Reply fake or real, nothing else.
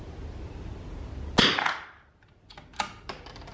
real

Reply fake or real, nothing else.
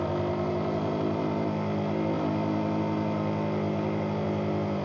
real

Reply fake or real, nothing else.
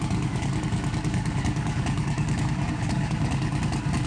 fake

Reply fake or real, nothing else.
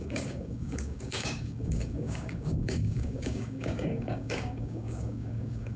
fake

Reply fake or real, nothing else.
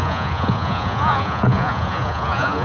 fake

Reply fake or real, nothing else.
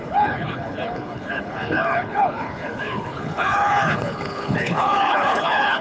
fake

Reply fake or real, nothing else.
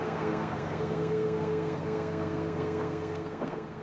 fake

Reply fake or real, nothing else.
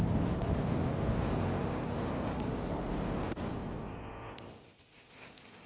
real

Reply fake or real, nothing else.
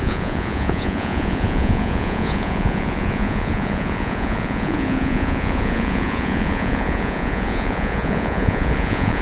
fake